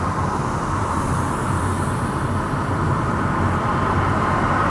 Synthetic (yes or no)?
yes